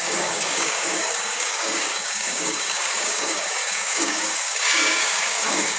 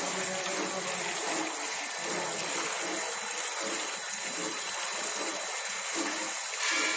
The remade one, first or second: first